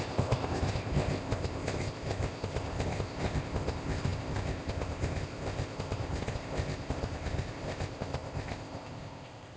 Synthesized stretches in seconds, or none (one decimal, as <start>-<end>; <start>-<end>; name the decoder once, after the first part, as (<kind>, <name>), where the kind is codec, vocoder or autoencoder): 0.0-9.6 (codec, ZipCodec)